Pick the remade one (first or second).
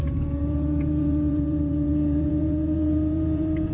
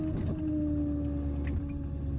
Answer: first